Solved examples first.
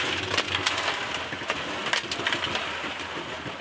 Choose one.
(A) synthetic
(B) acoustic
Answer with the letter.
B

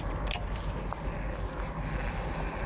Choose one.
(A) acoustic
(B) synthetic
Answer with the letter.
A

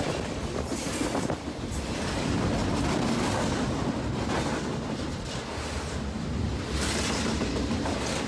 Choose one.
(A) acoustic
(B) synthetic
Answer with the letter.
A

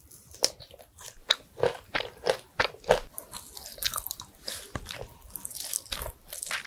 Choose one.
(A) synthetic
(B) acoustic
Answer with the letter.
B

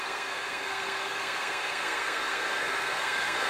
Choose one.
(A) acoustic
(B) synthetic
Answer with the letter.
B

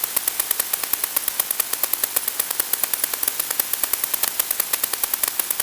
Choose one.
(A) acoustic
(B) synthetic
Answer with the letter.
A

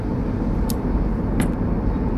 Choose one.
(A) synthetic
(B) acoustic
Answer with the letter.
B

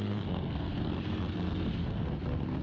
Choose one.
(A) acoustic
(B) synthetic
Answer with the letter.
B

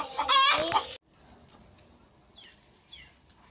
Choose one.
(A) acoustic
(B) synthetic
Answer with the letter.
A